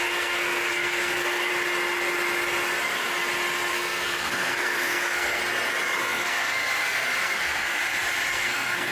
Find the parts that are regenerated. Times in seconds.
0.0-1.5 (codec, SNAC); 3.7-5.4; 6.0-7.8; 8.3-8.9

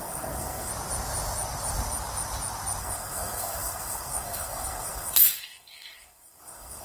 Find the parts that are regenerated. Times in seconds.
0.0-0.7 (codec, SNAC); 2.8-6.8

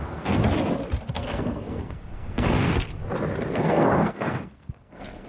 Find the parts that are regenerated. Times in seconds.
0.0-0.4 (codec, SNAC); 1.1-3.0; 3.5-5.3

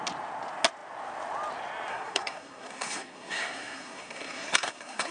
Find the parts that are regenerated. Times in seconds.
1.9-5.1 (codec, SNAC)

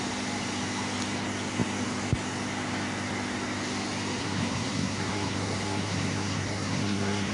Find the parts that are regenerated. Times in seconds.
4.2-7.3 (codec, SNAC)

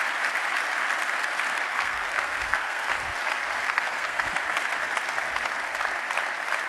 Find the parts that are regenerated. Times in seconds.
1.7-2.9 (codec, SNAC); 3.6-4.3

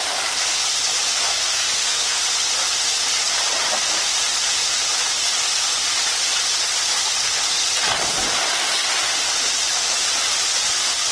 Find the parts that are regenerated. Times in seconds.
1.2-2.2 (codec, SNAC)